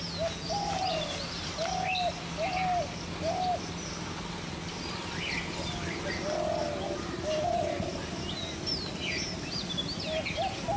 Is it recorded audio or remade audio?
recorded